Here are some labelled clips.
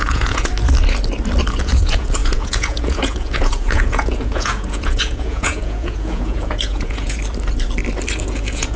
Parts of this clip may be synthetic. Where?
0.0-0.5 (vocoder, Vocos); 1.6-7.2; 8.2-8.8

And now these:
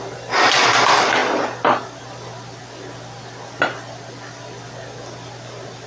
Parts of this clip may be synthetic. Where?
none

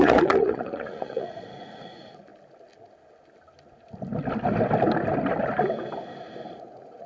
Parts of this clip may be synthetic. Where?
0.0-2.3 (vocoder, Vocos); 6.5-7.1

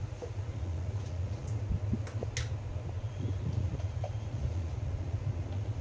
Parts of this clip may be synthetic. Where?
0.0-1.5 (vocoder, Vocos); 3.1-5.8

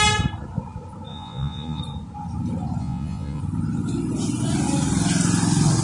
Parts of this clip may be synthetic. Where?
1.1-1.8 (vocoder, Vocos); 2.8-3.4

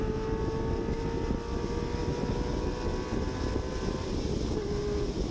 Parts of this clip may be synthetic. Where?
none

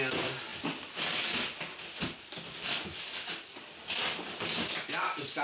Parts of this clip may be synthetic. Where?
none

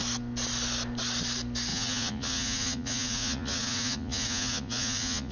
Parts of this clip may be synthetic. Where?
1.7-5.3 (vocoder, Vocos)